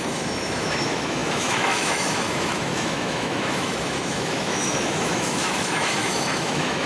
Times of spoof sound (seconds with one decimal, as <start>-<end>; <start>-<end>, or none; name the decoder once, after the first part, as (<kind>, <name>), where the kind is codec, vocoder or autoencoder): 0.0-6.9 (autoencoder, DAC-VAE)